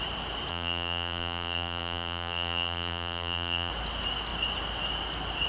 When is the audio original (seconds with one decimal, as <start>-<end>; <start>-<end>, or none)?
0.0-0.5; 3.7-5.5